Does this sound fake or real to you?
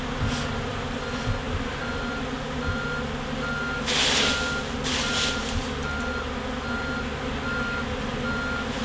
real